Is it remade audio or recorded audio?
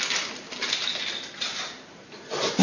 recorded